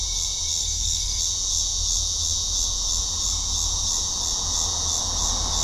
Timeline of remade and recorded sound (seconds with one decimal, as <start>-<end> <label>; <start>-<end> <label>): 0.0-0.6 recorded; 0.6-1.2 remade; 1.2-5.6 recorded